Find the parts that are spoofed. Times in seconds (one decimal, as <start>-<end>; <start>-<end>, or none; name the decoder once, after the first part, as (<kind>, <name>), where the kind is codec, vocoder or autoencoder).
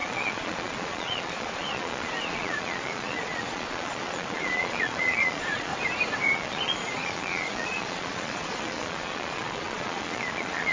0.0-5.7 (vocoder, Vocos); 6.3-10.7